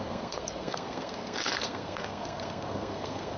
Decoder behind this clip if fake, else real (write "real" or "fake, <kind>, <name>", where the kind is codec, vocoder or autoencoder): fake, codec, SNAC